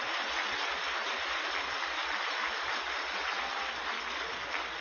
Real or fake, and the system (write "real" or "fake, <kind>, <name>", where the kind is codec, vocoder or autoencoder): real